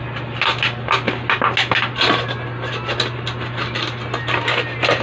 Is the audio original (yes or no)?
yes